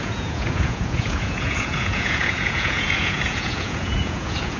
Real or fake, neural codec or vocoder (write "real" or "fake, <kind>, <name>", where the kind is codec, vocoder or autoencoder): fake, vocoder, Vocos